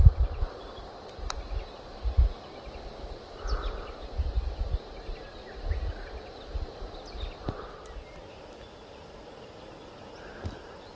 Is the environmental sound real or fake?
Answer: real